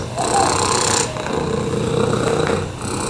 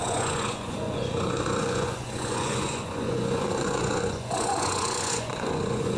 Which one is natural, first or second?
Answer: first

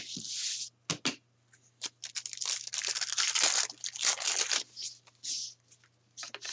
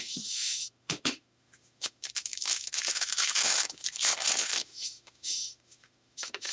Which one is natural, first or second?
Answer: first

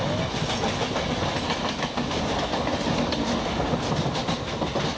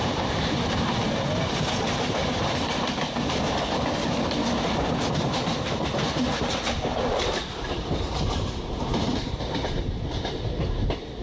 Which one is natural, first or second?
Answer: first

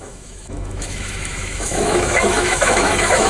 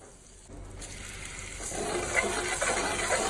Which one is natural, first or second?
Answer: second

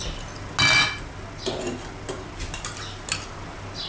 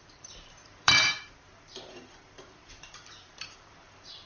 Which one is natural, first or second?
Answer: first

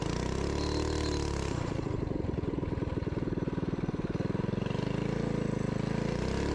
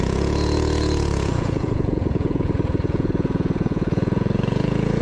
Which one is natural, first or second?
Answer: first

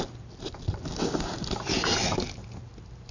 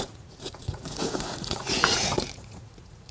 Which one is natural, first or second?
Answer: first